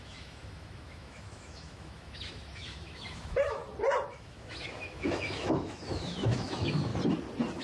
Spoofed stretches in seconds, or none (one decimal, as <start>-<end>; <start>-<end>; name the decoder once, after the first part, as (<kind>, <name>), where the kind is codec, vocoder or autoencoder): 0.0-3.6 (autoencoder, DAC-VAE); 4.1-6.9